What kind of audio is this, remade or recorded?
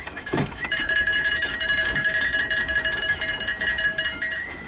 remade